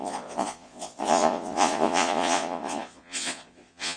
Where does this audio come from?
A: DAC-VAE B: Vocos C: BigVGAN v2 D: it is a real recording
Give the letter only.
B